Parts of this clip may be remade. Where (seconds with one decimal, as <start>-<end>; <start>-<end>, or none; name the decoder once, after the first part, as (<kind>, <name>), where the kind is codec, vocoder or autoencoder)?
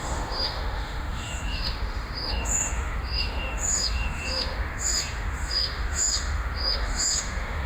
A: 0.0-7.7 (autoencoder, DAC-VAE)